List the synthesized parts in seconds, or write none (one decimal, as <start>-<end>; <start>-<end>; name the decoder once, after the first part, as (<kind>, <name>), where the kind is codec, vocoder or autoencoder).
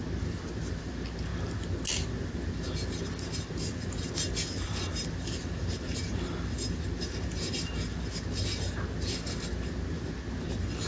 none